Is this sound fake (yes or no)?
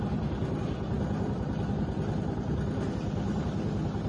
no